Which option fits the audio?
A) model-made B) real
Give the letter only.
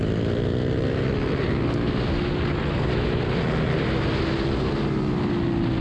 B